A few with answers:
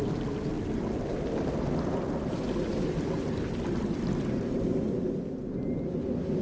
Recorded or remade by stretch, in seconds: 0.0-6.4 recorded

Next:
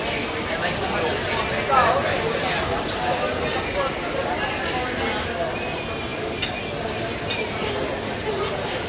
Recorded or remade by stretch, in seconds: 0.0-8.9 recorded

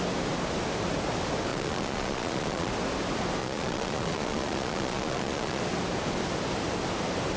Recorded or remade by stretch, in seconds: 0.0-1.5 recorded; 1.5-2.7 remade; 2.7-3.4 recorded; 3.4-5.6 remade; 5.6-7.4 recorded

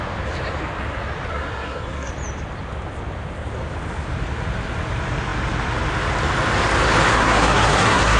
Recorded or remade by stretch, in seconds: 0.0-1.3 recorded; 1.3-2.1 remade; 2.1-7.1 recorded; 7.1-8.2 remade

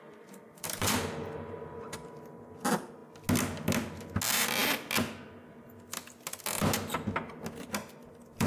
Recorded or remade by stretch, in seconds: 0.0-3.0 remade; 3.0-8.1 recorded; 8.1-8.5 remade

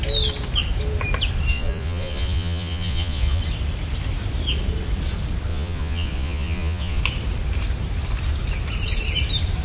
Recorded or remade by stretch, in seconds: 0.0-1.5 recorded; 1.5-3.4 remade; 3.4-5.5 recorded; 5.5-7.0 remade; 7.0-9.6 recorded

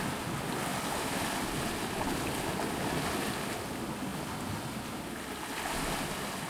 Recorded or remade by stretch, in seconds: 0.0-0.7 recorded; 0.7-2.3 remade; 2.3-6.5 recorded